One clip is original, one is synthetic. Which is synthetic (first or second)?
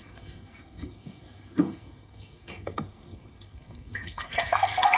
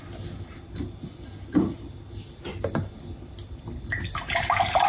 first